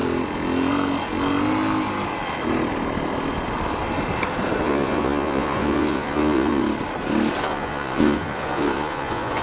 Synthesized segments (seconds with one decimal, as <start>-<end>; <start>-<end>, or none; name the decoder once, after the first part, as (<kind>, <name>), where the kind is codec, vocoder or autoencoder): 4.6-6.6 (vocoder, Vocos); 7.4-9.4